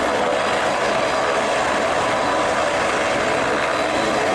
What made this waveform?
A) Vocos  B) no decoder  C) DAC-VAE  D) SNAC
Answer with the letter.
B